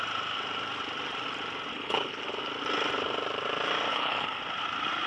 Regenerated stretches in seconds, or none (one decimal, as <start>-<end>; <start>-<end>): 1.7-2.2; 3.9-4.4